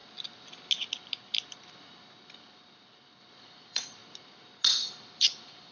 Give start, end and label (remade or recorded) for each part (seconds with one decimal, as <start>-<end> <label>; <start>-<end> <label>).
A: 0.0-3.4 recorded; 3.4-4.0 remade; 4.0-4.9 recorded; 4.9-5.7 remade